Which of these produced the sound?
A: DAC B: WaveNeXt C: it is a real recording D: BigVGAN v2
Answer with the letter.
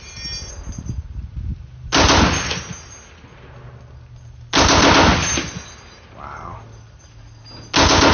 C